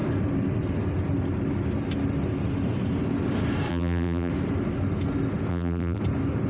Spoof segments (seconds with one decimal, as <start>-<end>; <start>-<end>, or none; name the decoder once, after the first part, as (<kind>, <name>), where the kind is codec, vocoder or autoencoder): 3.7-4.3 (vocoder, BigVGAN v2); 5.5-6.0